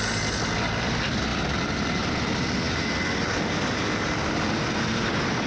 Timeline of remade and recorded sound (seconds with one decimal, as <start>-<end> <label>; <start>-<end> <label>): 0.0-5.5 recorded